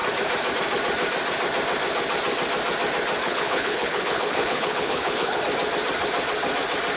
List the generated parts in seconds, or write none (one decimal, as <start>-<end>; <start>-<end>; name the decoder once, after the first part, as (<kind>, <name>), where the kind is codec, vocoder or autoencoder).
3.2-5.4 (codec, HILCodec)